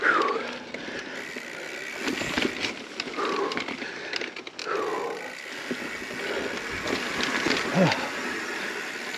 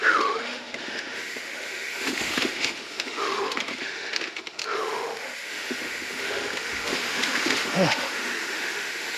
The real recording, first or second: first